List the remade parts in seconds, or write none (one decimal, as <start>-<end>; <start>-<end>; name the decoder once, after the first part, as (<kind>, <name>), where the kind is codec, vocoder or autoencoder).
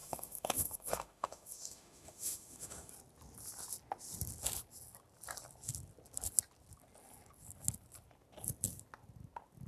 0.0-2.9 (autoencoder, DAC-VAE)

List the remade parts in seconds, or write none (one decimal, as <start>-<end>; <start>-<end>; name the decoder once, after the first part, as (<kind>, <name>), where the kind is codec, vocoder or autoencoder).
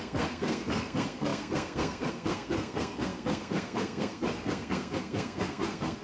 0.0-6.0 (codec, SNAC)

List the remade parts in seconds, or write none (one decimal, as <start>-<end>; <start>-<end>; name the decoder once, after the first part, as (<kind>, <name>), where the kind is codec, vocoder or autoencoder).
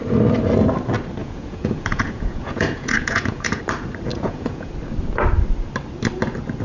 1.2-3.6 (vocoder, Vocos); 4.1-4.7